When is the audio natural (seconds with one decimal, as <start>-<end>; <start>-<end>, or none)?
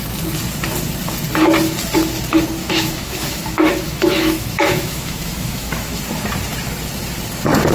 0.0-2.6; 6.0-7.7